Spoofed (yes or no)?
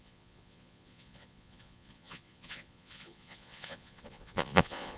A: yes